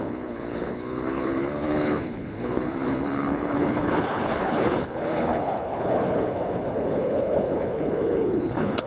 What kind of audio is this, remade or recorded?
remade